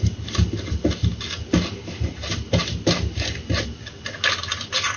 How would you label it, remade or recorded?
recorded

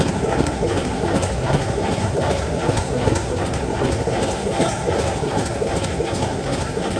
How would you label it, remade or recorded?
remade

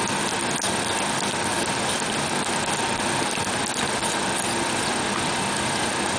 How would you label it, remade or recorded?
recorded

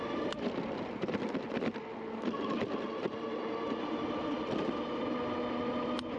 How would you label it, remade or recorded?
recorded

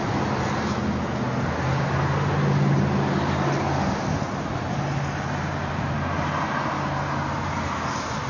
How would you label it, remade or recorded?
recorded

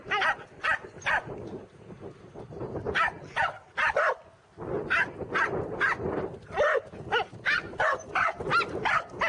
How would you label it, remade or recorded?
recorded